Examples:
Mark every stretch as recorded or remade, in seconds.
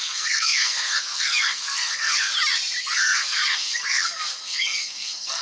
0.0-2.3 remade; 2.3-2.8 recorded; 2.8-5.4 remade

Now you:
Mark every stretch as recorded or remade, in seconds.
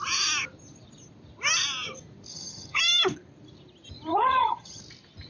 0.0-2.3 recorded; 2.3-2.8 remade; 2.8-4.1 recorded; 4.1-4.8 remade; 4.8-5.3 recorded